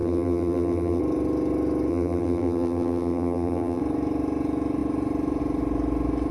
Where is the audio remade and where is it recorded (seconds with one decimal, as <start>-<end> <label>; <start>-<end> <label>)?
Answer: 0.0-1.0 remade; 1.0-1.9 recorded; 1.9-3.8 remade; 3.8-6.3 recorded